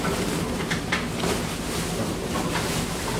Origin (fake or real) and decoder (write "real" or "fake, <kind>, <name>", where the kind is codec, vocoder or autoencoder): real